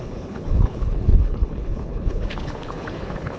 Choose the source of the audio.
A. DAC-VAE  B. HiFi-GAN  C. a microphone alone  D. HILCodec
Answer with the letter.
D